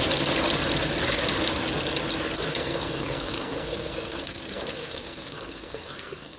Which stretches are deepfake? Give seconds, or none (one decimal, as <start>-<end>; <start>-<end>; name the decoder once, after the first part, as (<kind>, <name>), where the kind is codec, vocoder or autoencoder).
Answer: 2.5-6.4 (codec, SNAC)